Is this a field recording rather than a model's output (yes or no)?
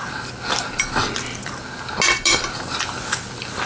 yes